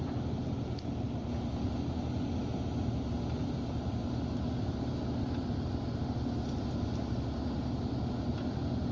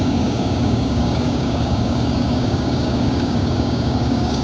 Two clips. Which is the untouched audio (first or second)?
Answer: first